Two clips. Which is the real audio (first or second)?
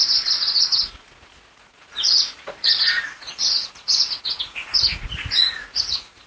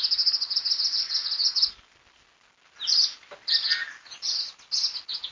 second